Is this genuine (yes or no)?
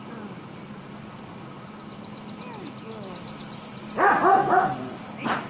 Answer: yes